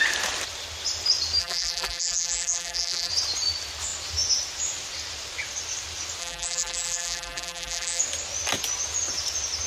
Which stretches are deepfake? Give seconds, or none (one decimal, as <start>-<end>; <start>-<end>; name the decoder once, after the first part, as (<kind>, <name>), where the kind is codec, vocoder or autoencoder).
1.4-3.1 (vocoder, BigVGAN v2); 6.2-8.0